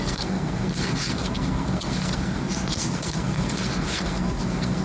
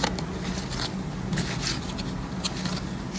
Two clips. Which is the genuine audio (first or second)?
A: second